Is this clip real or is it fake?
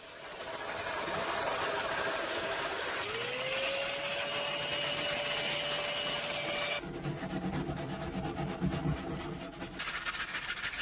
real